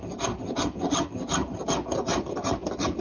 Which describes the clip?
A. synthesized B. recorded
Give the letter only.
B